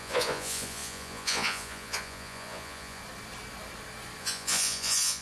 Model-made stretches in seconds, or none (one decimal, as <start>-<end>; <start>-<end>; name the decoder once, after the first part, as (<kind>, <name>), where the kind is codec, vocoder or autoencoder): 0.0-3.0 (vocoder, Vocos); 4.2-5.2